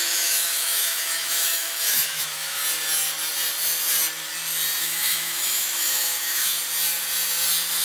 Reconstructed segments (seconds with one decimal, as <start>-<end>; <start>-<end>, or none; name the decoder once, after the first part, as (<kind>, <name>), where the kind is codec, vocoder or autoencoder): 0.0-2.6 (autoencoder, DAC-VAE); 4.8-6.6